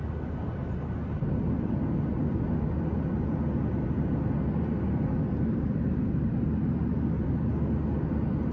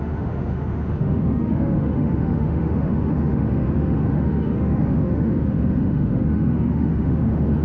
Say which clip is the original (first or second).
first